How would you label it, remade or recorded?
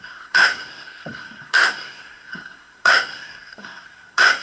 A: remade